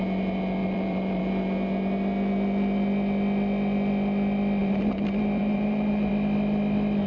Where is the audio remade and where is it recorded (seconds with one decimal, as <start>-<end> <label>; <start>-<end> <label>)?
0.0-0.6 recorded; 0.6-1.2 remade; 1.2-4.6 recorded; 4.6-6.1 remade; 6.1-7.1 recorded